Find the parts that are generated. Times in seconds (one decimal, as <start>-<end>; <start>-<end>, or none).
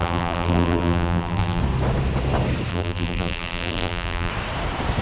0.0-1.6; 2.7-4.3